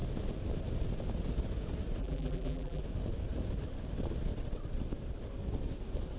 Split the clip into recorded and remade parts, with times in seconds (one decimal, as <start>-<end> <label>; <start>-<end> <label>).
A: 0.0-2.0 recorded; 2.0-2.8 remade; 2.8-6.2 recorded